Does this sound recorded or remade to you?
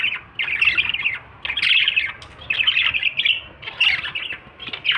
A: recorded